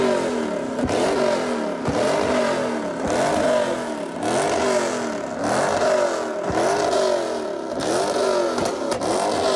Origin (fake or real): real